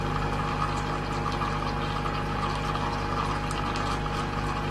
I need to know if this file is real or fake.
real